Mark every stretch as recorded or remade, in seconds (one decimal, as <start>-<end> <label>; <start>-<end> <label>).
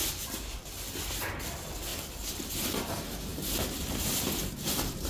0.0-1.5 remade; 1.5-1.9 recorded; 1.9-2.9 remade; 2.9-5.1 recorded